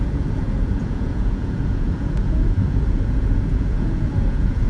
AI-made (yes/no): yes